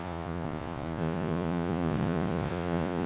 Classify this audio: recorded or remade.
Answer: remade